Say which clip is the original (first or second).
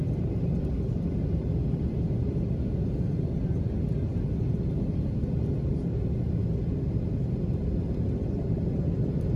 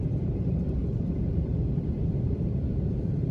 first